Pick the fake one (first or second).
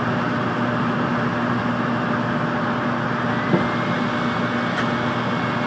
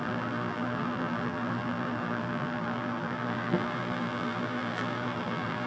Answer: second